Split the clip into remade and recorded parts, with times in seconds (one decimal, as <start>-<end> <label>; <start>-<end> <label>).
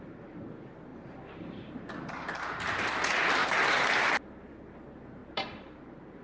0.0-0.9 recorded; 0.9-1.7 remade; 1.7-3.4 recorded; 3.4-4.1 remade; 4.1-5.2 recorded; 5.2-6.2 remade